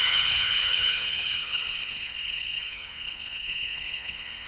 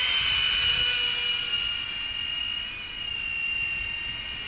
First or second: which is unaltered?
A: second